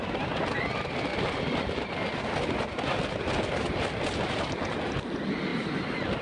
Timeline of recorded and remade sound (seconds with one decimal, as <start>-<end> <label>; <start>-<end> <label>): 0.0-6.2 recorded